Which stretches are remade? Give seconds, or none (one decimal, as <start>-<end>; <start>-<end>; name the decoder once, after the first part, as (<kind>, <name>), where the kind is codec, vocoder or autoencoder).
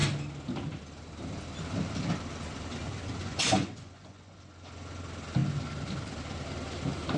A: 3.2-4.4 (vocoder, Vocos)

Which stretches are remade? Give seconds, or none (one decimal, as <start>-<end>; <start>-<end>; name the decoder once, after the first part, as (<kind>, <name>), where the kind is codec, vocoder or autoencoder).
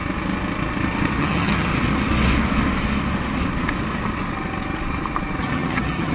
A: 1.2-1.7 (vocoder, HiFi-GAN); 5.4-6.1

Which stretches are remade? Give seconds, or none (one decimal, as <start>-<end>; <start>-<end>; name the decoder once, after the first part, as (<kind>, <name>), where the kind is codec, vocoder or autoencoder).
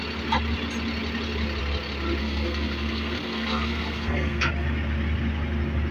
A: 2.2-4.5 (codec, SNAC)